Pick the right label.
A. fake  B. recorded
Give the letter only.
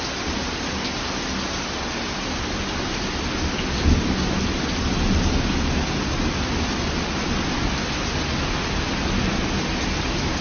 B